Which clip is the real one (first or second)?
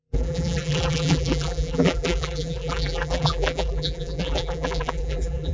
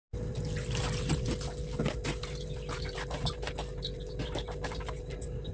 second